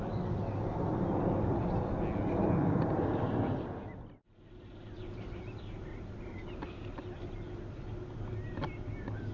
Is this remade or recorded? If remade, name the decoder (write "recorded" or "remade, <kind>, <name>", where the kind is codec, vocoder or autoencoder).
recorded